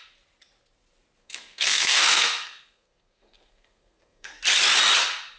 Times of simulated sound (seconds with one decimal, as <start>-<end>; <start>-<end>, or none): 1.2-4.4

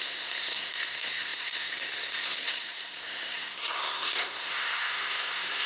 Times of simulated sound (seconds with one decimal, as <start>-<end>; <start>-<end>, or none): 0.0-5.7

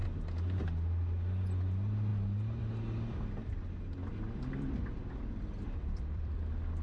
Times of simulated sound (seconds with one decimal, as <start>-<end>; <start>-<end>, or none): 3.4-6.3